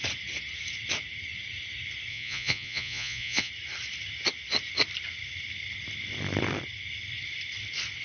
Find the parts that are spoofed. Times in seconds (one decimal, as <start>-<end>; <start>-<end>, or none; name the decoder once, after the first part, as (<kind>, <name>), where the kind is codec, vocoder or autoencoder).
2.1-3.5 (vocoder, Vocos)